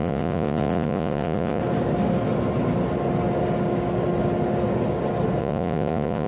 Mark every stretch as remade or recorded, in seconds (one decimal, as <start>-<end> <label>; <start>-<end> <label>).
0.0-1.6 remade; 1.6-5.4 recorded; 5.4-6.3 remade